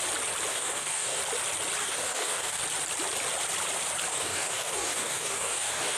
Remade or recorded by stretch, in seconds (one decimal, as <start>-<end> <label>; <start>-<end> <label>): 0.0-0.5 recorded; 0.5-1.2 remade; 1.2-1.8 recorded; 1.8-2.6 remade; 2.6-4.1 recorded; 4.1-6.0 remade